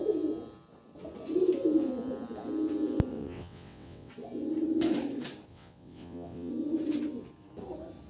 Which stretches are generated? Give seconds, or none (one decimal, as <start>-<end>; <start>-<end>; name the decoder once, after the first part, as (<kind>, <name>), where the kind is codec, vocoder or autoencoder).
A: 3.1-4.1 (vocoder, WaveNeXt); 5.5-6.5